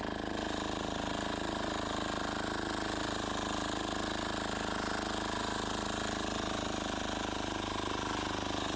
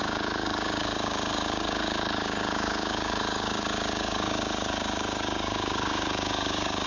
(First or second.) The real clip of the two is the first